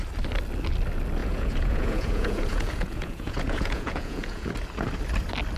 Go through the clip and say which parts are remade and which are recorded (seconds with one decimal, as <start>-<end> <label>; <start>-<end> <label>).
0.0-1.2 recorded; 1.2-4.5 remade; 4.5-5.6 recorded